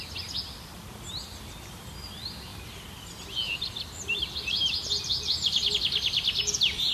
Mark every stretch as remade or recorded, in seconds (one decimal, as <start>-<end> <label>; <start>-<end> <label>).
0.0-6.9 recorded